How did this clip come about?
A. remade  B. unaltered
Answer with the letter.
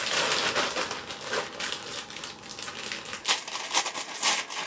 B